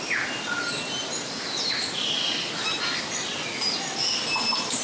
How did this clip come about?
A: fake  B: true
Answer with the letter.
B